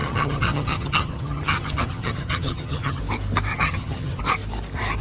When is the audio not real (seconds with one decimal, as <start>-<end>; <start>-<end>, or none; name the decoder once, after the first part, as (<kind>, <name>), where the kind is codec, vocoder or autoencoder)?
0.0-3.0 (vocoder, HiFi-GAN); 3.5-4.2